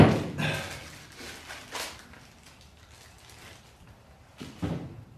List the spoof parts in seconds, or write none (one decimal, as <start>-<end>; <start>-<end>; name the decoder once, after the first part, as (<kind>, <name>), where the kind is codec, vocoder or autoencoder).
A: none